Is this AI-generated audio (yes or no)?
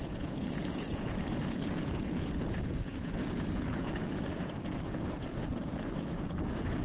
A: yes